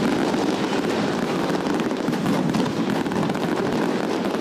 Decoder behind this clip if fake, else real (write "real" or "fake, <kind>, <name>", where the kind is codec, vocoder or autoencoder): real